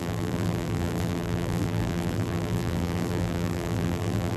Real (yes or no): no